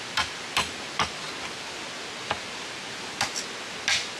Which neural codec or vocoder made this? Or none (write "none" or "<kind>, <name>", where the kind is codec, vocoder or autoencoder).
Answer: none